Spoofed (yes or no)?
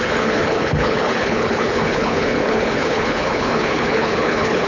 yes